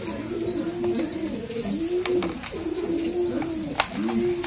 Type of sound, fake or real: real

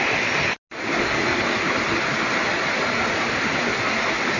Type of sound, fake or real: real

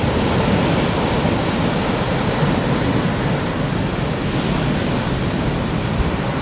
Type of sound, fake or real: real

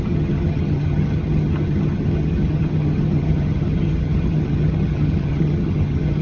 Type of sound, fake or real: fake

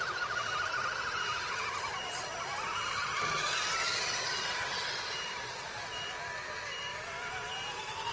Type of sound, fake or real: real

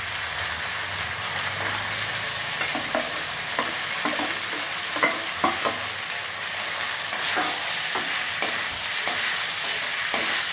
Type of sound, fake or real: real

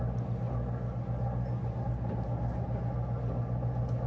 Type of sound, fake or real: real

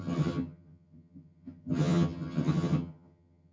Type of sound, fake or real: fake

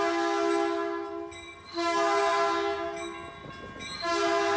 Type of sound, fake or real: real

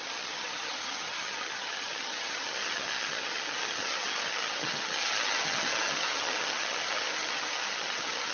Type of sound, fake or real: fake